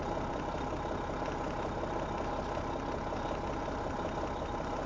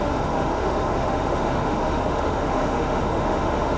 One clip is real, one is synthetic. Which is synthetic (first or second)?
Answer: second